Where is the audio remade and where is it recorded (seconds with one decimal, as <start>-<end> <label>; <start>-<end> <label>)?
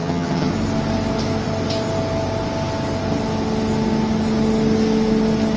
0.0-0.5 remade; 0.5-5.6 recorded